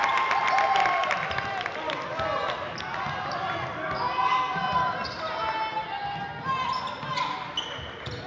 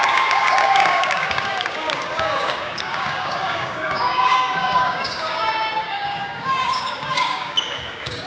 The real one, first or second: first